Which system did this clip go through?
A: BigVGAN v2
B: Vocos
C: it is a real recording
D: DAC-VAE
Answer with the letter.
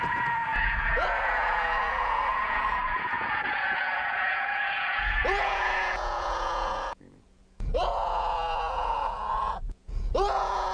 B